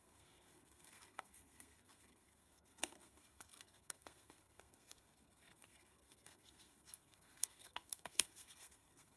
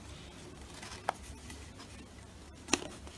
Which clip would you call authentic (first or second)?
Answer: second